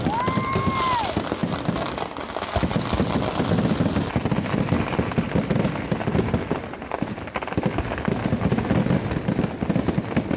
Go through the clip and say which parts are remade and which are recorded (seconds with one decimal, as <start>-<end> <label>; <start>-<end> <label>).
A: 0.0-10.4 recorded